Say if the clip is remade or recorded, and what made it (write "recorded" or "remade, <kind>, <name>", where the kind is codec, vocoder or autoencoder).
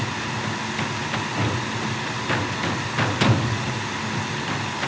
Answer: recorded